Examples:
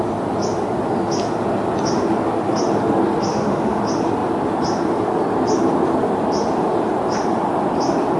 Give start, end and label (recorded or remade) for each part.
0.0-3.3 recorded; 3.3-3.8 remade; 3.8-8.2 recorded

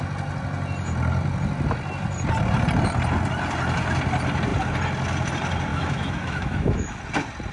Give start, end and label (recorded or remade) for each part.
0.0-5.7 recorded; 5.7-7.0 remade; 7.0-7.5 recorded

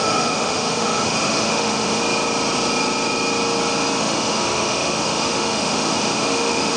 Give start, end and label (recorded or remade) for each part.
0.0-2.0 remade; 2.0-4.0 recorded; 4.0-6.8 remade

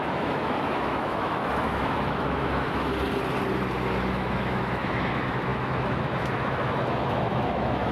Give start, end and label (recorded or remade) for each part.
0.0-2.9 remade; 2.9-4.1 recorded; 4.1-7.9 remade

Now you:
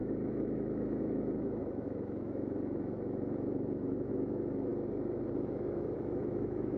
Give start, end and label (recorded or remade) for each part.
0.0-4.7 remade; 4.7-5.3 recorded; 5.3-6.8 remade

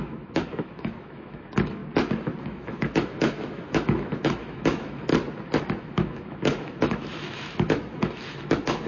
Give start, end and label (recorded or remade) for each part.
0.0-1.8 remade; 1.8-2.4 recorded; 2.4-5.1 remade; 5.1-5.8 recorded; 5.8-8.9 remade

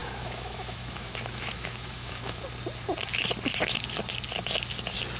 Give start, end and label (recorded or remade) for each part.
0.0-2.4 remade; 2.4-5.2 recorded